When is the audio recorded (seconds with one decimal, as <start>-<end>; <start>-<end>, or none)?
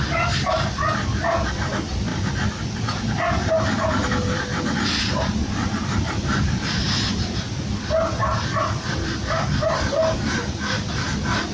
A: 0.0-11.5